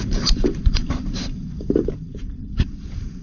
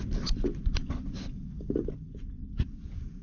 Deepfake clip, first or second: first